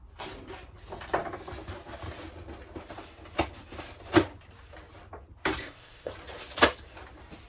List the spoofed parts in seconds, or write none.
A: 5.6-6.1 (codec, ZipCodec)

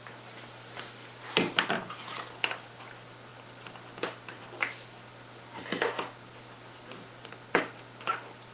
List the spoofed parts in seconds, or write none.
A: none